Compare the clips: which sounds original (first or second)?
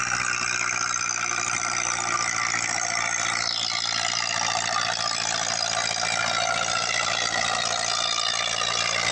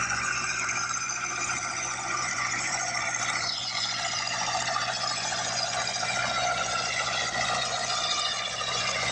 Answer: first